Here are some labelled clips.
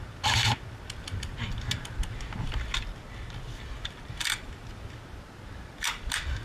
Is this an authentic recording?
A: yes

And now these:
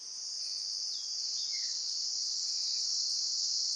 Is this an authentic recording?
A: yes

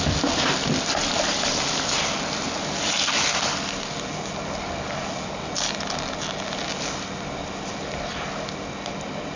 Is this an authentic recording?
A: yes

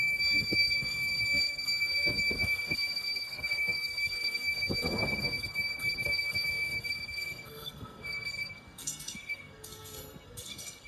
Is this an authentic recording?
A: no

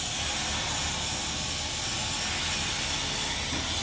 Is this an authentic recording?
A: yes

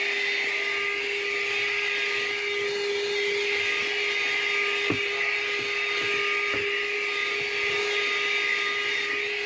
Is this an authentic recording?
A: yes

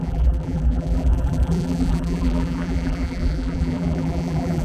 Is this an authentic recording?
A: no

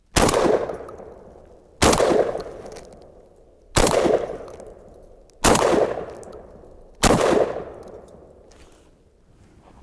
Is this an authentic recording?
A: yes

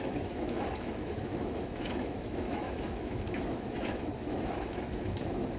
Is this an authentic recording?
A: no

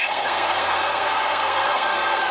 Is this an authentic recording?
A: no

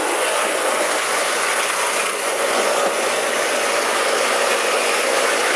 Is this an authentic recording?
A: no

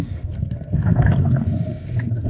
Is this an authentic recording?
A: no